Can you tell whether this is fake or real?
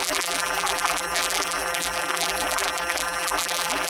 fake